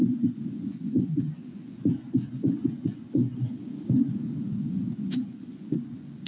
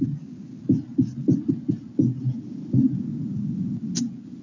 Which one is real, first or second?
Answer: second